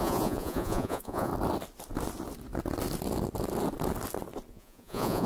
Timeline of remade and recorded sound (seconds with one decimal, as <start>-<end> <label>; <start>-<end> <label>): 0.0-1.3 remade; 1.3-4.5 recorded; 4.5-5.3 remade